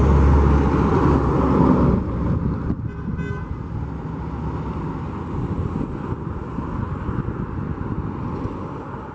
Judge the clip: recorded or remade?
recorded